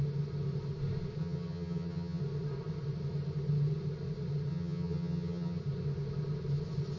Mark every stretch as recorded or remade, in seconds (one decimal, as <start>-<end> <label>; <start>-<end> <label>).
0.0-1.2 recorded; 1.2-2.2 remade; 2.2-4.5 recorded; 4.5-5.6 remade; 5.6-7.0 recorded